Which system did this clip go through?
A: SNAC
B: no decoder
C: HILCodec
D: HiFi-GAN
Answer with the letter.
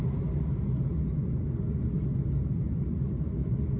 B